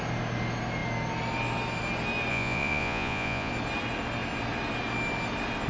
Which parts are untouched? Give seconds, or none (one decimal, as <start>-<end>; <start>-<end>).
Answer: 0.0-2.3; 3.5-5.7